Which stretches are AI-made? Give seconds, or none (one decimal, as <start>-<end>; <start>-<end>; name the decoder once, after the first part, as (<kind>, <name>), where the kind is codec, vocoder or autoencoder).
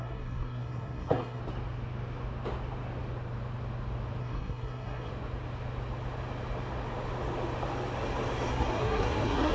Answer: 0.0-1.4 (codec, SNAC); 4.2-5.1; 8.5-9.5